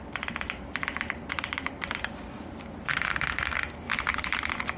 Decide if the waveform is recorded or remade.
recorded